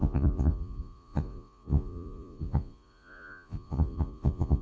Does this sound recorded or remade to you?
remade